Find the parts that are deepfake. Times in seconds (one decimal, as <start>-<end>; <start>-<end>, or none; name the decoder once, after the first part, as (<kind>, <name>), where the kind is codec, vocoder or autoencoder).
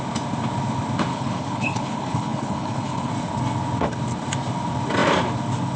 1.1-3.1 (codec, HILCodec)